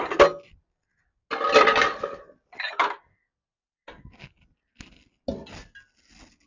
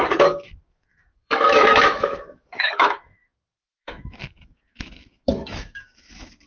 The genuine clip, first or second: first